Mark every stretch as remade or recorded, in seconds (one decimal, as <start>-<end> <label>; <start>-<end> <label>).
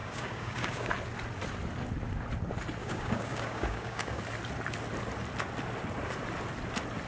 0.0-0.9 remade; 0.9-2.8 recorded; 2.8-4.2 remade; 4.2-7.1 recorded